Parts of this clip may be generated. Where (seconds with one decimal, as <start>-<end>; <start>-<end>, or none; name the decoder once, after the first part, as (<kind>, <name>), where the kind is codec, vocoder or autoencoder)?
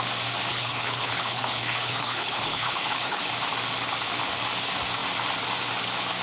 0.5-3.2 (codec, HILCodec)